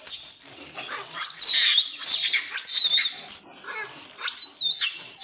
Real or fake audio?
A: real